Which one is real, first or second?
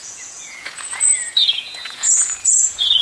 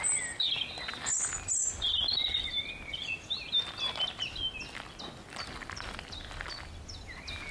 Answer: second